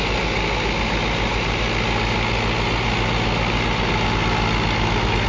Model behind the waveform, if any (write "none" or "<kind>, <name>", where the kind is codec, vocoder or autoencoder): none